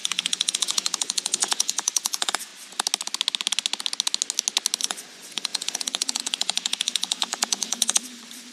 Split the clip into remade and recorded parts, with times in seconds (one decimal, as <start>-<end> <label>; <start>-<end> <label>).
0.0-2.5 remade; 2.5-4.8 recorded; 4.8-8.5 remade